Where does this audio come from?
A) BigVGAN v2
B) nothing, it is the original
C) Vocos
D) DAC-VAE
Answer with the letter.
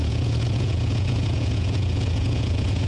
C